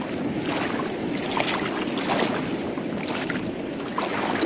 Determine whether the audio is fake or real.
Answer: real